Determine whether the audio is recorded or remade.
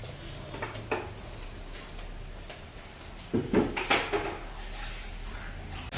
recorded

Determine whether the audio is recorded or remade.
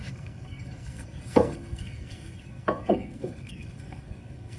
remade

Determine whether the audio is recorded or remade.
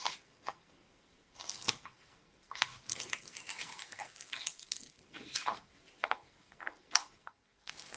remade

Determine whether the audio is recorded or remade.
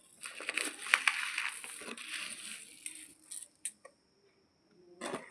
recorded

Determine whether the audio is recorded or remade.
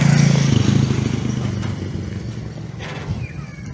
recorded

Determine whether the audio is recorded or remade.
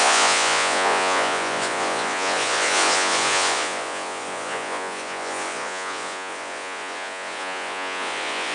remade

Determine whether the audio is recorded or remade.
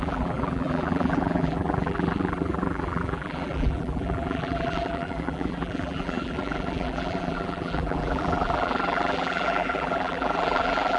remade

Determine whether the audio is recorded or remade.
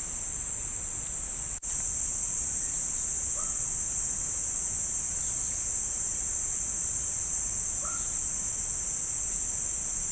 recorded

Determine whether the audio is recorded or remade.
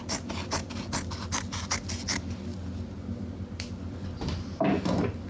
recorded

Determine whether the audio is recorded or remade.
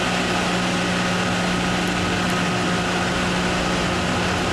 recorded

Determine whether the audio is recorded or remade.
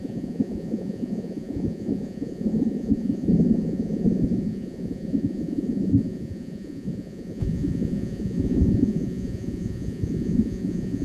remade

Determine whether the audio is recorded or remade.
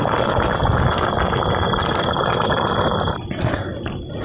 recorded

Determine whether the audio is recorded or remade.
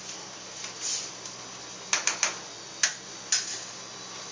recorded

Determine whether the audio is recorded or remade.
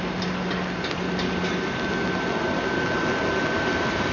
recorded